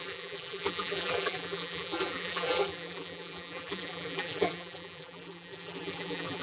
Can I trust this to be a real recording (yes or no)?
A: no